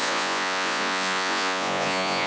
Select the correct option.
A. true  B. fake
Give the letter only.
B